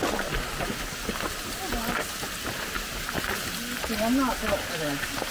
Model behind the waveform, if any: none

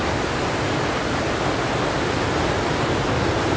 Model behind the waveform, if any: none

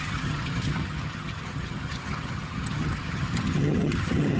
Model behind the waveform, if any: vocoder, HiFi-GAN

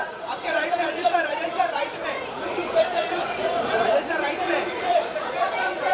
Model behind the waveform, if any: vocoder, Vocos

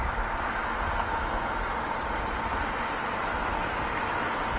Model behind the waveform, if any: none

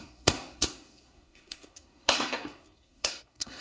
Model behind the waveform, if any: codec, SNAC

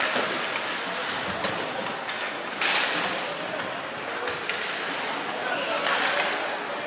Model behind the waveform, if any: none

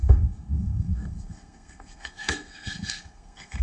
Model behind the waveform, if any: codec, SNAC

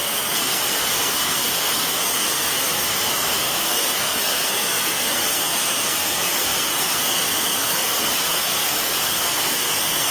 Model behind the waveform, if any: codec, SNAC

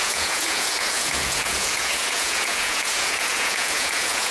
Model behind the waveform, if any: vocoder, Vocos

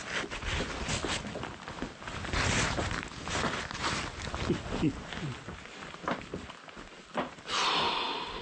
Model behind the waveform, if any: none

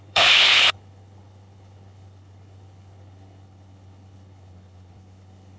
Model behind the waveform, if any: codec, HILCodec